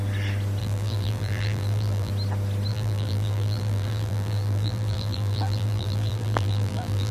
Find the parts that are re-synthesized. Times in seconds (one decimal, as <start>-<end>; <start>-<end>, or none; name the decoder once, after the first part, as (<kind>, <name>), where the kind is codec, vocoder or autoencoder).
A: 0.6-2.1 (vocoder, BigVGAN v2); 2.7-7.1